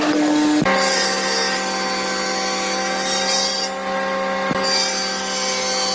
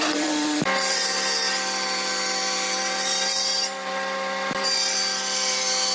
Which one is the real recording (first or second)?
first